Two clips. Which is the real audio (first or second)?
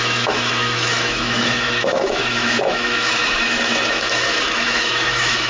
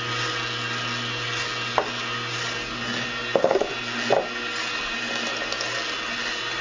second